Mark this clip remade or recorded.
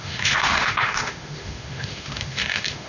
remade